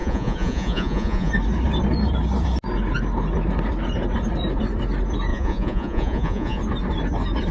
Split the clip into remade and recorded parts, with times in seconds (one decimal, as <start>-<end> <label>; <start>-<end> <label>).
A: 0.0-1.3 remade; 1.3-5.3 recorded; 5.3-6.6 remade; 6.6-7.5 recorded